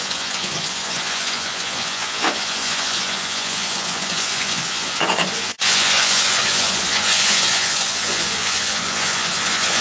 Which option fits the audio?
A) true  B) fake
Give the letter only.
B